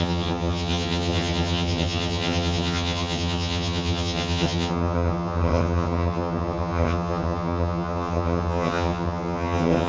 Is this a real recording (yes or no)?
no